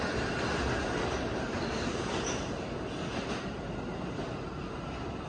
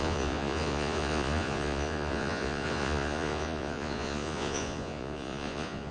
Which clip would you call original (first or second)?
first